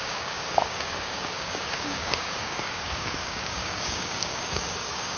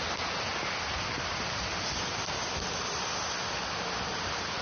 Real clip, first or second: second